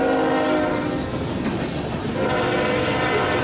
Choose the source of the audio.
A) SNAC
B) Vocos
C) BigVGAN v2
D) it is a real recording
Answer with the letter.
D